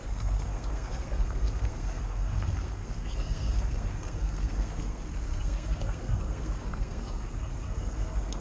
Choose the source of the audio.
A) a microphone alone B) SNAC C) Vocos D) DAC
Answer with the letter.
B